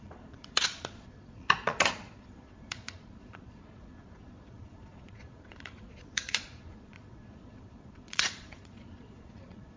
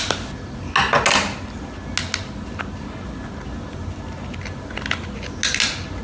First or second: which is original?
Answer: second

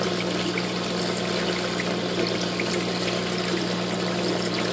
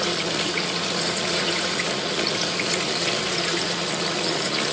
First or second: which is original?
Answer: first